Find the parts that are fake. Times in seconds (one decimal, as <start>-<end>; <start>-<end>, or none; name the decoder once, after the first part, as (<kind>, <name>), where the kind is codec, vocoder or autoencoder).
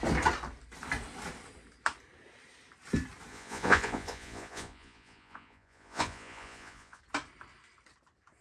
3.3-7.0 (vocoder, Vocos)